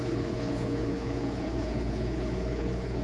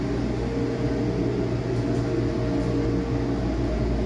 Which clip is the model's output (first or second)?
first